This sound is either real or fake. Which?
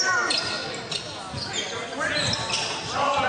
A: real